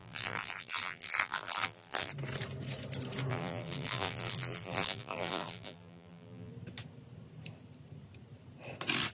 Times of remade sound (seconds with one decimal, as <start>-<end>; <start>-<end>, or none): 0.0-2.1; 3.3-6.5